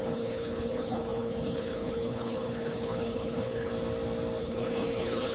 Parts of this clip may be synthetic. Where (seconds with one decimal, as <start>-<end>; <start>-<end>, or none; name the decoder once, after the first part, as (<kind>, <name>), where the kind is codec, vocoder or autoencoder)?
0.0-3.7 (codec, HILCodec); 4.4-5.3